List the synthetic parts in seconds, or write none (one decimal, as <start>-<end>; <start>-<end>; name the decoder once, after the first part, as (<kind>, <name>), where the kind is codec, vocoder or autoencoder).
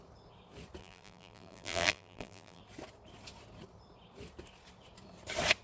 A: 0.8-2.6 (vocoder, BigVGAN v2)